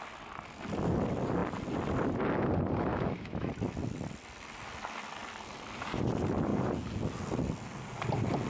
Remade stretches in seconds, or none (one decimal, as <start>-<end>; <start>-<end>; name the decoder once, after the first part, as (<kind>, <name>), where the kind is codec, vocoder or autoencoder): 2.9-3.5 (autoencoder, DAC-VAE)